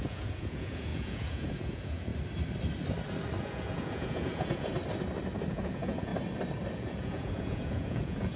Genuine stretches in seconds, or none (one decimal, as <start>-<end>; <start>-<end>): 2.1-3.4; 4.7-5.5; 6.1-6.7

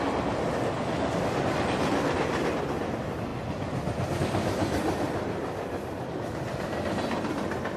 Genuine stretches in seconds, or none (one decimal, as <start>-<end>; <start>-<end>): 0.0-7.8

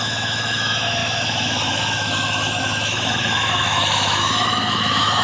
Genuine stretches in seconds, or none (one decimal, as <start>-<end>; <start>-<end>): none

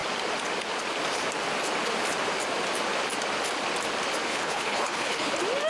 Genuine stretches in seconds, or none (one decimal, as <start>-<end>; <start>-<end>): 0.0-4.3; 5.3-5.7